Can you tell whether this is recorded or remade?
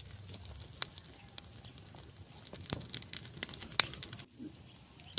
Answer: recorded